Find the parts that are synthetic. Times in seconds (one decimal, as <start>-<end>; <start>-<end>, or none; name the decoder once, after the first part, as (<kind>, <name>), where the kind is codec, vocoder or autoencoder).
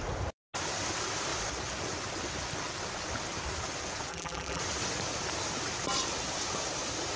4.1-4.6 (vocoder, BigVGAN v2)